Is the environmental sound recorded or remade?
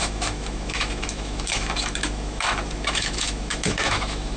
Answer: remade